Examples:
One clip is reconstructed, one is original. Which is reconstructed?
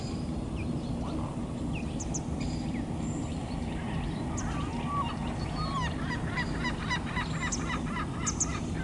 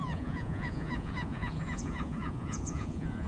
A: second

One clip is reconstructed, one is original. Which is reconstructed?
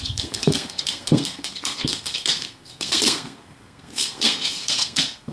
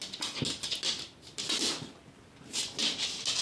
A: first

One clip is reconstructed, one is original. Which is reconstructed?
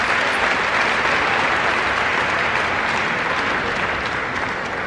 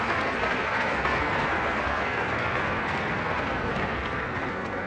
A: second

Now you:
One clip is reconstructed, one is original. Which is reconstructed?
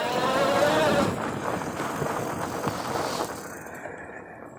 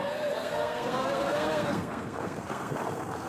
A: second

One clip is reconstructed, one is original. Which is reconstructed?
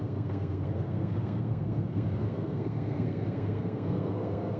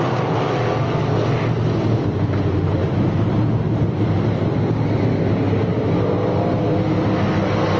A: first